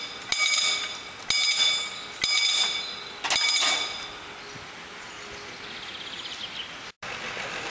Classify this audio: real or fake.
real